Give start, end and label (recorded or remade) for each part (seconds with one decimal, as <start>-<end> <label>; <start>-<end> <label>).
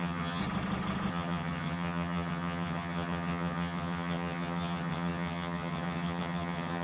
0.0-0.4 remade; 0.4-1.1 recorded; 1.1-6.8 remade